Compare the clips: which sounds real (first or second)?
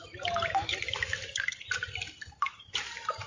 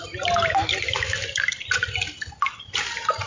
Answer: second